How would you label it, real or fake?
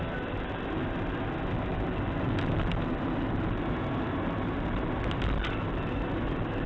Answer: real